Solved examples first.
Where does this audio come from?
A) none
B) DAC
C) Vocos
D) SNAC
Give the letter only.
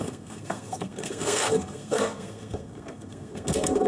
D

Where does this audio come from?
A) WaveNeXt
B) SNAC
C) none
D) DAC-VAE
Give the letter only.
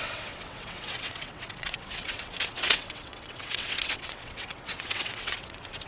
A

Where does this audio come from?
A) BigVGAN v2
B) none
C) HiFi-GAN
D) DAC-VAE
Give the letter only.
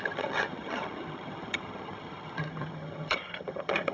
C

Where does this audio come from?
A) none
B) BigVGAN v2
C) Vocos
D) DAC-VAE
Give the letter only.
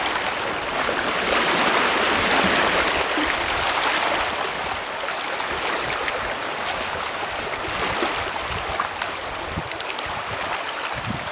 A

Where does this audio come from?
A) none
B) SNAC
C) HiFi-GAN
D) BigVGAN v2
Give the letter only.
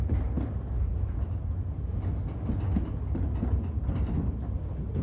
A